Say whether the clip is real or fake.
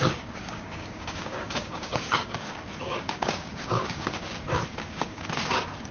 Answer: fake